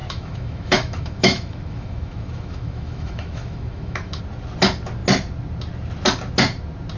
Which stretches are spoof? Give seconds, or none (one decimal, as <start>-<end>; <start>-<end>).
0.0-4.2